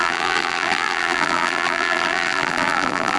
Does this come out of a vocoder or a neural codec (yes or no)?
yes